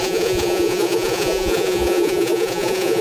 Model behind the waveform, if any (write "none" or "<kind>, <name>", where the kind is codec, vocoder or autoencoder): vocoder, Vocos